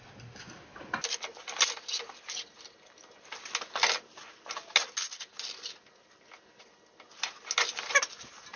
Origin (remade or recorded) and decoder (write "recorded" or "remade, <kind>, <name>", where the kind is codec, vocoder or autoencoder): recorded